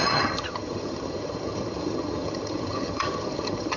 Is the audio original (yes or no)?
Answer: no